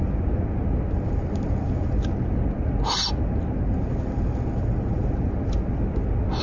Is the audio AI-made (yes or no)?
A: no